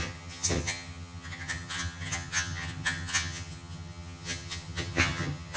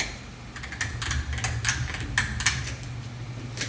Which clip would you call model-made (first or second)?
first